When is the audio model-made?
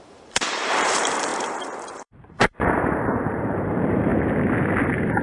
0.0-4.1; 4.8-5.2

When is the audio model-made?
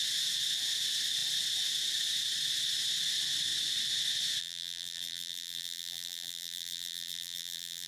4.4-7.9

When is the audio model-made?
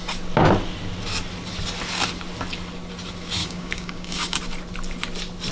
3.4-4.4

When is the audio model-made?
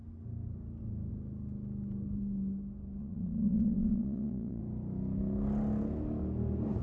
3.0-4.6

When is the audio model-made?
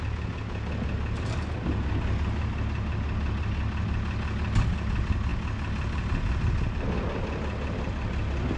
none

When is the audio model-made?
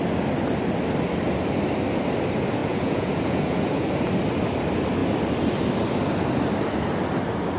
2.6-3.9